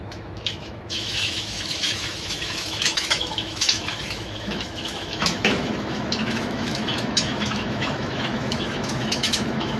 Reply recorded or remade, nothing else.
remade